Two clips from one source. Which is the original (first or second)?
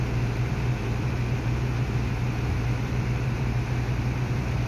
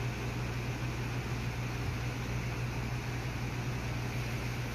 second